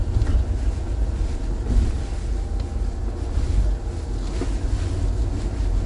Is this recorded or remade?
recorded